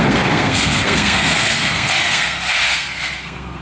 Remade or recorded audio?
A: remade